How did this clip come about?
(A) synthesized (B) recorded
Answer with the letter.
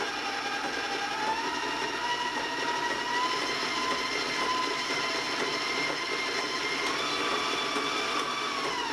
B